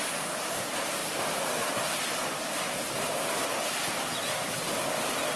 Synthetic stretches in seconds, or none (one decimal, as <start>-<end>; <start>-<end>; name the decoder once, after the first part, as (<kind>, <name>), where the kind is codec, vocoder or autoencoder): none